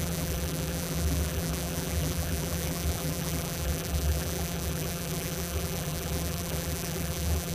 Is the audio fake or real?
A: fake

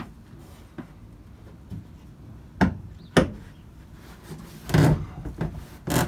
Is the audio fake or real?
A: real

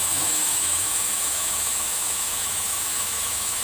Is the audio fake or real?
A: fake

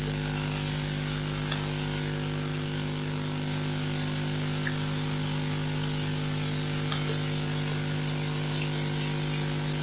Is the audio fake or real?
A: real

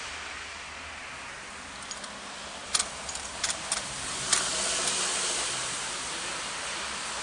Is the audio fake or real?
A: real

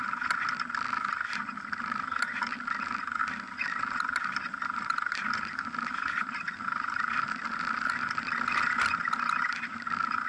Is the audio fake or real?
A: real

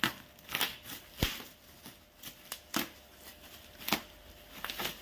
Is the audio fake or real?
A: real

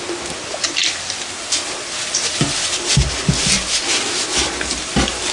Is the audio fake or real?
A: real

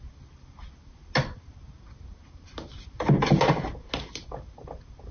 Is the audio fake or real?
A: real